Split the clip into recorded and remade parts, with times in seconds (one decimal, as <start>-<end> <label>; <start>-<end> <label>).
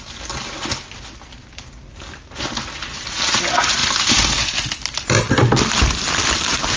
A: 0.0-6.8 recorded